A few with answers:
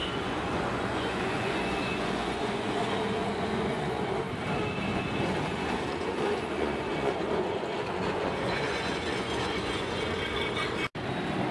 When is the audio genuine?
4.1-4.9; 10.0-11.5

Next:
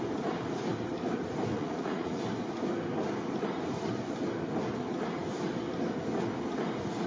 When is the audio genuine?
0.0-1.5; 2.2-7.1

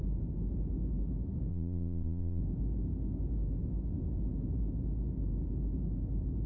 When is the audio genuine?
0.0-1.5; 2.4-6.5

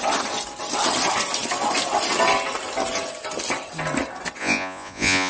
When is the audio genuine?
0.0-4.4